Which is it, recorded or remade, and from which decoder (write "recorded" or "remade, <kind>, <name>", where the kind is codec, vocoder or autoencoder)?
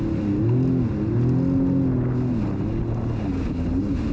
recorded